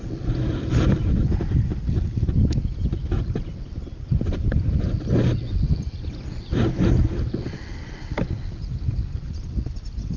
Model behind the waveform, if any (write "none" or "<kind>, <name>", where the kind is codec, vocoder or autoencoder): none